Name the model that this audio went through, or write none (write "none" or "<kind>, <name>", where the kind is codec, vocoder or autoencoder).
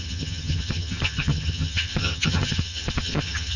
vocoder, HiFi-GAN